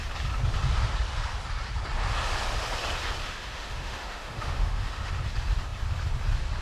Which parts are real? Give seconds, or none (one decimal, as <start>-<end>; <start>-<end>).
0.0-3.2; 5.1-6.6